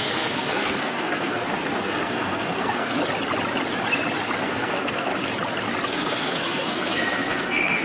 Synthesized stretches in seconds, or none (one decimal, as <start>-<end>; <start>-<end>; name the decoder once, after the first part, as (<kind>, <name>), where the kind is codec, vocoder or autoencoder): 0.0-3.0 (codec, SNAC); 4.4-5.1; 5.9-7.8